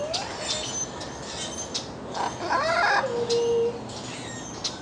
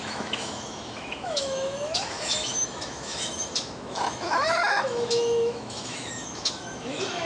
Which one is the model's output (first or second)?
second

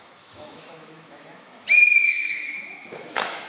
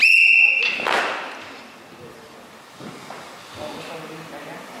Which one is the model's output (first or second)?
first